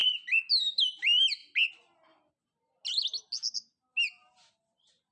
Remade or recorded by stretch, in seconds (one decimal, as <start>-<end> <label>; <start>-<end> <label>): 0.0-5.1 recorded